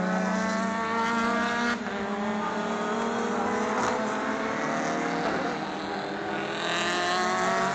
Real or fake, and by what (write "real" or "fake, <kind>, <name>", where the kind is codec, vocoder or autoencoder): real